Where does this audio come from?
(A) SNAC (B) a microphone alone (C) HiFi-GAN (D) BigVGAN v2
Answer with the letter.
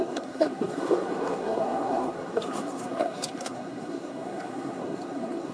A